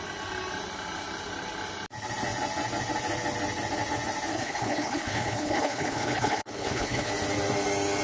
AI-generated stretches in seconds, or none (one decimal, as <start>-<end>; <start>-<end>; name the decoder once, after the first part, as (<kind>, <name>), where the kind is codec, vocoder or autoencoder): 4.3-7.1 (codec, HILCodec)